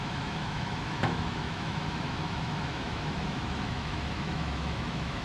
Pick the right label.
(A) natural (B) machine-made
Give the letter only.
B